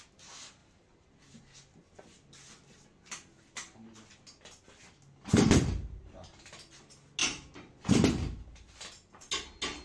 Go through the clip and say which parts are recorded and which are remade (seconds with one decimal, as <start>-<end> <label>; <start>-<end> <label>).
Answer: 0.0-9.8 recorded